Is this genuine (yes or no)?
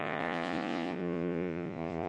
no